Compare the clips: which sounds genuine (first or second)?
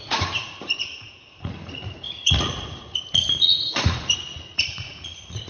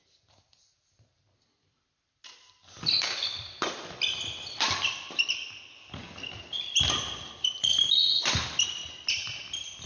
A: second